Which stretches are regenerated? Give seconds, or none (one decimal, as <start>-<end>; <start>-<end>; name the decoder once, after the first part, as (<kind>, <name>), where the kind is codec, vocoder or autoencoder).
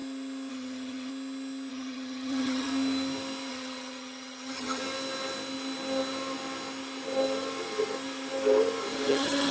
0.5-1.1 (vocoder, HiFi-GAN); 1.7-2.7; 3.5-4.8; 9.1-9.5